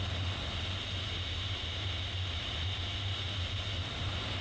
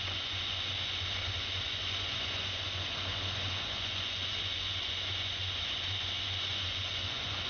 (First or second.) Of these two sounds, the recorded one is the first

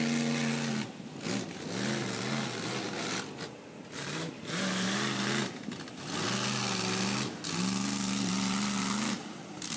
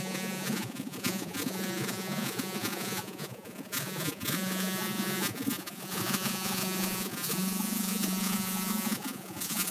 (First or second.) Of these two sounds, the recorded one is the first